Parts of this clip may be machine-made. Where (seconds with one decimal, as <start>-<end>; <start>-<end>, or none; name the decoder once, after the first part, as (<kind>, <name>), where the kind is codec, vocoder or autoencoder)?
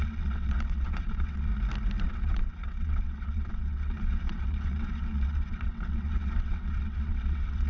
0.0-1.5 (vocoder, WaveNeXt); 2.0-7.7